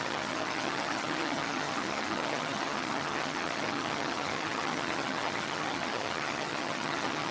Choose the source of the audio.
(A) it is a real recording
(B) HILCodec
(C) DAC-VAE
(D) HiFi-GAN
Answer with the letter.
D